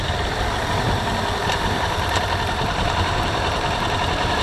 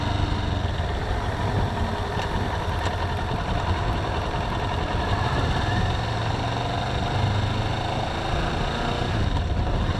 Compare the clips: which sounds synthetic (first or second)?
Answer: first